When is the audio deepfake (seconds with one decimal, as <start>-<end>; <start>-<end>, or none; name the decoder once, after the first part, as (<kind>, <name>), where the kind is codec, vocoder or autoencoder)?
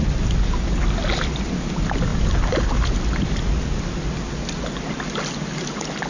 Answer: none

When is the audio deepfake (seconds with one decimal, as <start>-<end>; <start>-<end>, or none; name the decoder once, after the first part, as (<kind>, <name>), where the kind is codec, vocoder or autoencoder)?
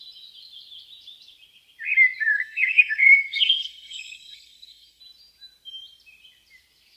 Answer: 2.3-5.0 (codec, SNAC)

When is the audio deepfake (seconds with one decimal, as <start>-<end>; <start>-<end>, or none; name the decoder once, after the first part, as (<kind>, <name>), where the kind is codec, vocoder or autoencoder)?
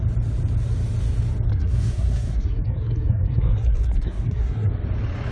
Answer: 1.5-4.7 (codec, SNAC)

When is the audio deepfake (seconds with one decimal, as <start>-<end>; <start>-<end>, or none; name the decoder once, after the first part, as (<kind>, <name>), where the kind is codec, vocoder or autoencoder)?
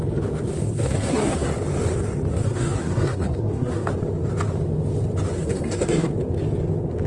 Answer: 0.6-1.5 (codec, SNAC); 2.3-3.9; 5.4-6.1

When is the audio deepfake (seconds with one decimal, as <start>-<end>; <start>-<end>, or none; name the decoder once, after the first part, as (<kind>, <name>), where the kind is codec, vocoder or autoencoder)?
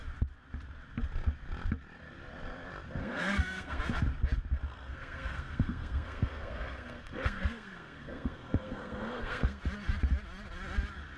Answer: 3.0-3.8 (codec, SNAC); 4.7-9.6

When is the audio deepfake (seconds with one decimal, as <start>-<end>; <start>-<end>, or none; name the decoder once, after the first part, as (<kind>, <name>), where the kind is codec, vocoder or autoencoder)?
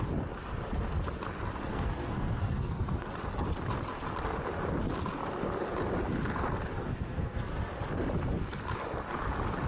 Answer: 1.7-3.1 (codec, SNAC); 6.7-7.7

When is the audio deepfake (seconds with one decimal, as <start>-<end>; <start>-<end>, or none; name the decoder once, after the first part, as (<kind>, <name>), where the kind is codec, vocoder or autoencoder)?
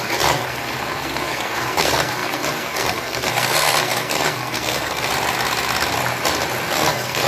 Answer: 0.0-5.1 (codec, SNAC); 6.7-7.3